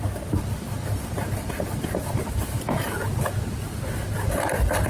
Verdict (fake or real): real